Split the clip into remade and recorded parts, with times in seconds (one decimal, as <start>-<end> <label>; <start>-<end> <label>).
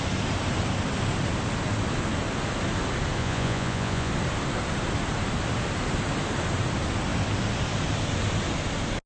0.0-3.2 recorded; 3.2-4.1 remade; 4.1-9.1 recorded